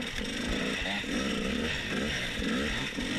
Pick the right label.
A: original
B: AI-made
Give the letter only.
A